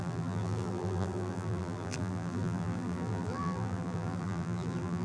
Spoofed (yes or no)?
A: yes